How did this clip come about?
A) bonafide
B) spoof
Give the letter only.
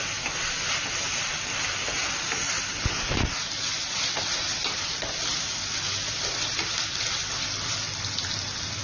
A